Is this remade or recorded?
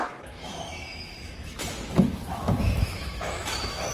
remade